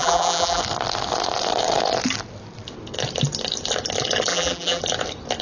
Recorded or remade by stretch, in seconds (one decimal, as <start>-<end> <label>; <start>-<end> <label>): 0.0-0.6 remade; 0.6-4.3 recorded; 4.3-4.8 remade; 4.8-5.4 recorded